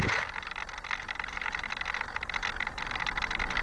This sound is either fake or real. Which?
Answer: real